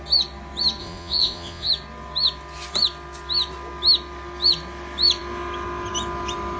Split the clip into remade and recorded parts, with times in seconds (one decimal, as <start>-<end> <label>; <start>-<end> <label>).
0.0-0.8 recorded; 0.8-1.7 remade; 1.7-6.6 recorded